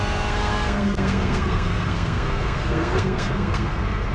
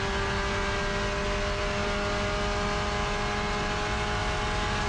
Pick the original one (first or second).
second